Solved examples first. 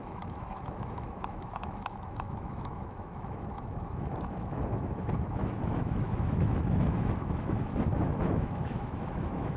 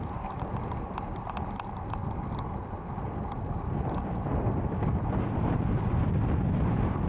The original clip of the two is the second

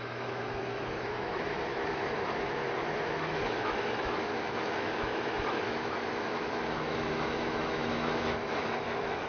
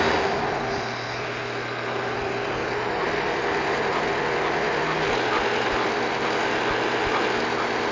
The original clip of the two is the second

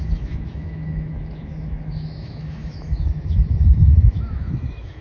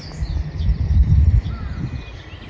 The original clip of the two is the second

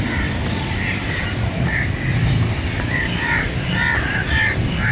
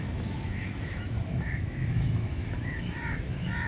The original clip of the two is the first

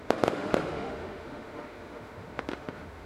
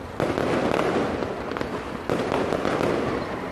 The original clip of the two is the second